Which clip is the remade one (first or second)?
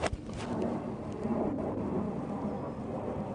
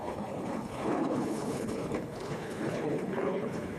second